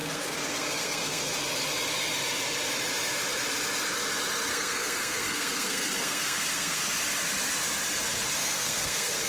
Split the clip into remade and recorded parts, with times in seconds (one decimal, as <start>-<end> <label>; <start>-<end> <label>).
0.0-1.3 remade; 1.3-4.5 recorded; 4.5-6.8 remade; 6.8-8.4 recorded; 8.4-9.3 remade